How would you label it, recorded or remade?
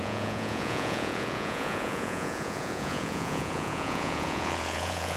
remade